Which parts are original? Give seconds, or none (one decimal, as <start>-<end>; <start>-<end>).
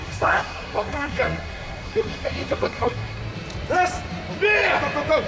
3.2-5.3